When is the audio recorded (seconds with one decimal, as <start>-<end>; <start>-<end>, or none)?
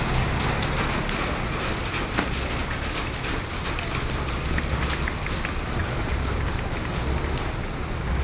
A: 0.0-2.6; 3.2-5.8; 6.9-8.2